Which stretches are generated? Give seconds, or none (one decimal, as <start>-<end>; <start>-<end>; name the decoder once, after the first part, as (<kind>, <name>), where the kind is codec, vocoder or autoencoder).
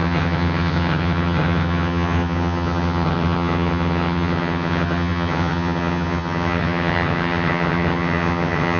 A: 0.0-8.8 (vocoder, HiFi-GAN)